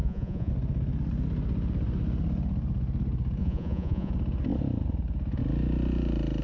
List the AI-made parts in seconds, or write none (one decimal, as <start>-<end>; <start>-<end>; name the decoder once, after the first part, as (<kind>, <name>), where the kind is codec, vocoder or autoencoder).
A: 0.0-0.5 (vocoder, Vocos); 3.4-4.1